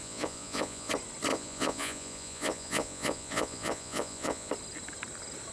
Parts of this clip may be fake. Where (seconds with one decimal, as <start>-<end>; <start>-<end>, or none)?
0.0-0.9; 1.3-4.5